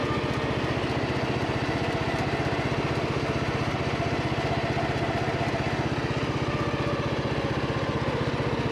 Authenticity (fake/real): real